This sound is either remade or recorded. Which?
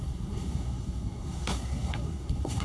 remade